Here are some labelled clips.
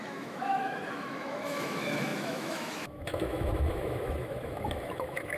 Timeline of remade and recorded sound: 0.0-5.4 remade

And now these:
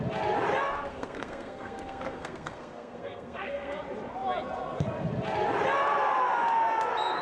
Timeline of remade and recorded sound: 0.0-0.9 recorded; 0.9-3.8 remade; 3.8-7.2 recorded

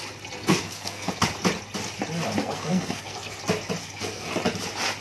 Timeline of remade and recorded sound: 0.0-0.4 recorded; 0.4-1.2 remade; 1.2-2.4 recorded; 2.4-3.4 remade; 3.4-3.8 recorded; 3.8-4.3 remade; 4.3-5.0 recorded

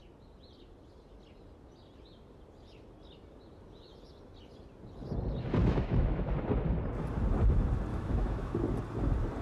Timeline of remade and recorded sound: 0.0-5.6 recorded; 5.6-6.3 remade; 6.3-7.9 recorded; 7.9-8.5 remade; 8.5-9.4 recorded